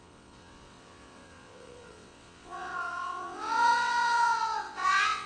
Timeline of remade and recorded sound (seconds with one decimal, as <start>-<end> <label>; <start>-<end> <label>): 0.0-5.3 remade

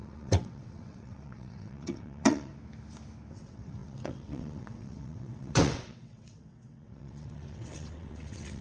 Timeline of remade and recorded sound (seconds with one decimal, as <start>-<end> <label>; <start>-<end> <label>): 0.0-2.5 remade; 2.5-3.3 recorded; 3.3-8.6 remade

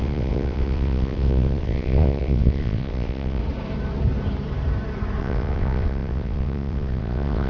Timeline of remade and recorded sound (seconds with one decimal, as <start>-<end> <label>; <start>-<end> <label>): 0.0-3.4 remade; 3.4-5.2 recorded; 5.2-7.5 remade